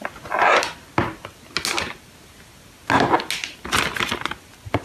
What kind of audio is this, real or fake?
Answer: real